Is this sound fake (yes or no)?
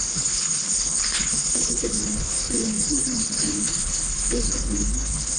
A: yes